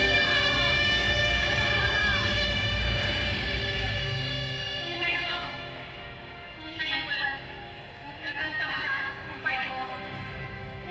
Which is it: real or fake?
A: fake